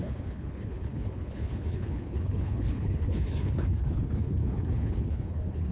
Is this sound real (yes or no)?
no